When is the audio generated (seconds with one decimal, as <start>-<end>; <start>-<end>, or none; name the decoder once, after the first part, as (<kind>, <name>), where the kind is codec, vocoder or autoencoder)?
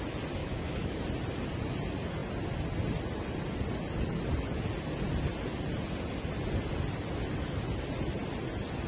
0.4-1.0 (autoencoder, DAC-VAE)